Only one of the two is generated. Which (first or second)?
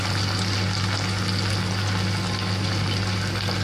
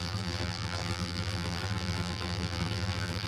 second